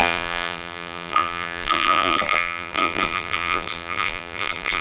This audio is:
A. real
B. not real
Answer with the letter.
B